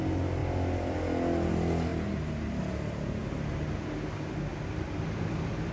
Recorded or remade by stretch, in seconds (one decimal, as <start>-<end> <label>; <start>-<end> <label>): 0.0-5.7 recorded